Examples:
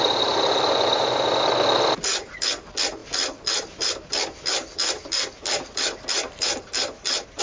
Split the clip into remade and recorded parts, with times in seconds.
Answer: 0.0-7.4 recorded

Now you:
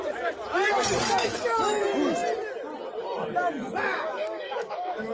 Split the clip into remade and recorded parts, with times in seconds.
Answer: 0.0-1.2 recorded; 1.2-1.8 remade; 1.8-3.9 recorded; 3.9-5.1 remade

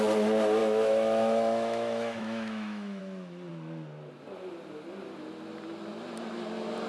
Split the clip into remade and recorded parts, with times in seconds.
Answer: 0.0-0.6 recorded; 0.6-3.0 remade; 3.0-6.9 recorded

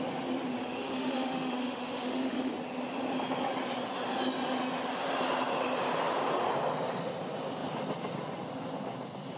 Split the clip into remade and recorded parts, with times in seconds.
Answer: 0.0-0.6 recorded; 0.6-2.5 remade; 2.5-9.4 recorded